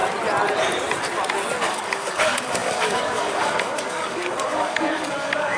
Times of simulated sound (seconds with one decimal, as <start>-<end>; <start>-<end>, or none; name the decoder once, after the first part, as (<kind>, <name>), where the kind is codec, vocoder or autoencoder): 1.7-5.6 (codec, DAC)